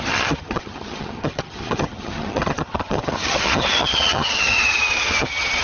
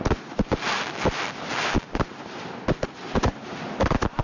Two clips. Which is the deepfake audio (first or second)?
first